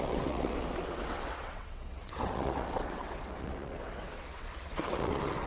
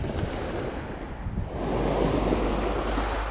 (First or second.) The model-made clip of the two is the first